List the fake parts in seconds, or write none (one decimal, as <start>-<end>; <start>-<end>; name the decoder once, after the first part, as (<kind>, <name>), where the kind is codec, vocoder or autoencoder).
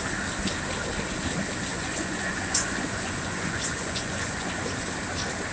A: 1.7-4.5 (vocoder, Vocos)